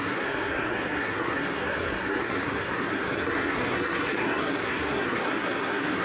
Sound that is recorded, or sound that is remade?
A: remade